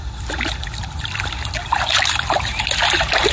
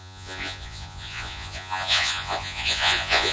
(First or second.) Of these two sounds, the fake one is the second